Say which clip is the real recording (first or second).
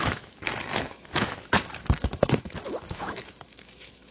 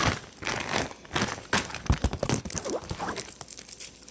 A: second